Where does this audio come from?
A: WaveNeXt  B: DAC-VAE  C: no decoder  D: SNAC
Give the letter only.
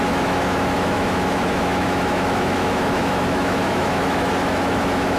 B